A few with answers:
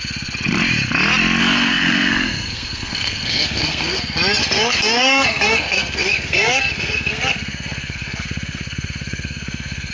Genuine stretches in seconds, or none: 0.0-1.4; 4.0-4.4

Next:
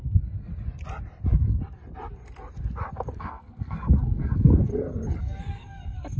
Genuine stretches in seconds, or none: 0.5-3.2; 4.7-5.2

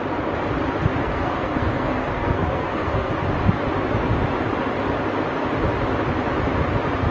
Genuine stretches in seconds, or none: 0.0-1.0; 3.1-7.1

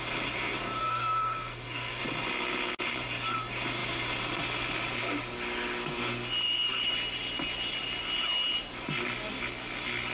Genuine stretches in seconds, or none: 0.0-0.8; 2.0-10.1

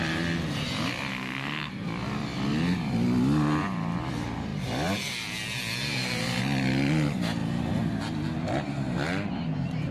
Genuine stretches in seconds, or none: 0.0-1.1; 1.7-9.9

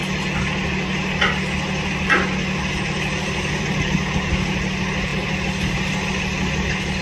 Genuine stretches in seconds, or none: 0.0-7.0